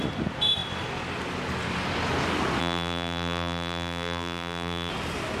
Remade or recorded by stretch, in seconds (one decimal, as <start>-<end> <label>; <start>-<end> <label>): 0.0-2.6 recorded; 2.6-4.9 remade; 4.9-5.4 recorded